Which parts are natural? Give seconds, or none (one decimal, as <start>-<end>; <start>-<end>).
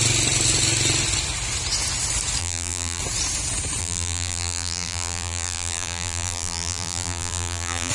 0.0-2.4; 3.0-3.8